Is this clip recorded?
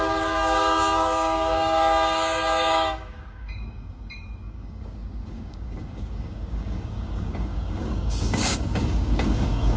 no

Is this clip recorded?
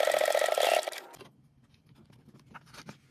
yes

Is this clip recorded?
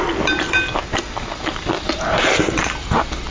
yes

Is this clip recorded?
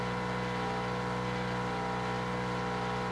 yes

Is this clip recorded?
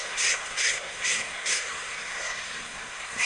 no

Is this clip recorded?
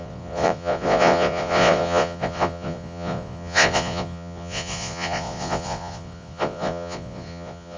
no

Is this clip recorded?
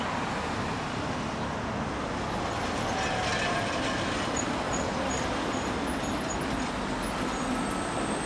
yes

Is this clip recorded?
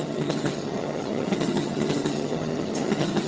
no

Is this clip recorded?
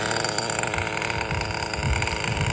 yes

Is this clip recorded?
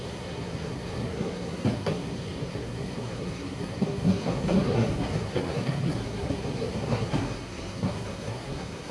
no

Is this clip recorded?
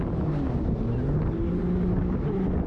yes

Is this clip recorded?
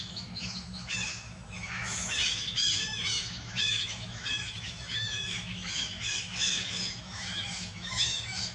no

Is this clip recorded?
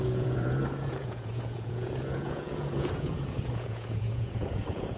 no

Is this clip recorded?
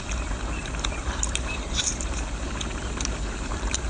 no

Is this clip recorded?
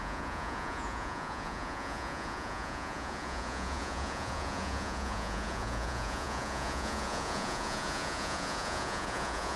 no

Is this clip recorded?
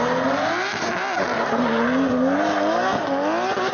yes